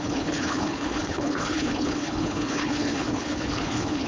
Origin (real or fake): fake